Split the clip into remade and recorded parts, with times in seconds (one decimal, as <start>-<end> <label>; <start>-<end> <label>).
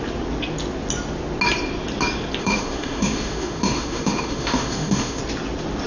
0.0-2.4 recorded; 2.4-5.2 remade; 5.2-5.9 recorded